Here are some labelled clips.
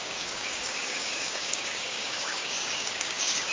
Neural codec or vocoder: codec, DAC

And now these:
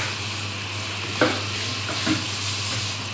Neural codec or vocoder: none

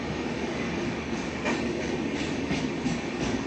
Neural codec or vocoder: codec, DAC